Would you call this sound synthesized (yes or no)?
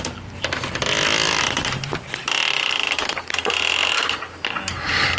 no